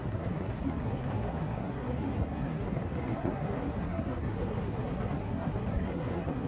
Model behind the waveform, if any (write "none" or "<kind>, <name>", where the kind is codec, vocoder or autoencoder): codec, SNAC